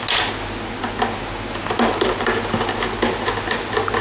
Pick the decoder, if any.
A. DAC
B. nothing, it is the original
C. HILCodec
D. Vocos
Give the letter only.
B